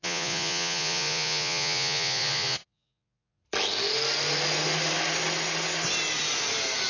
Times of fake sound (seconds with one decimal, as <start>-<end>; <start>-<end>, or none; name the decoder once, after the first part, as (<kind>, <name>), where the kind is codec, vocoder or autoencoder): 0.0-3.4 (vocoder, Vocos)